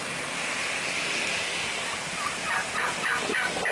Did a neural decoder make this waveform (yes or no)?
no